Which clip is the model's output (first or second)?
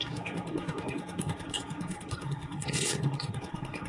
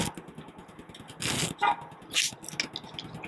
first